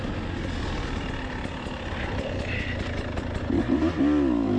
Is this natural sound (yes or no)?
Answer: yes